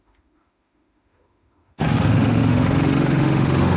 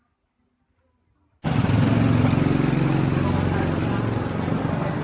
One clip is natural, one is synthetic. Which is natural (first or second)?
second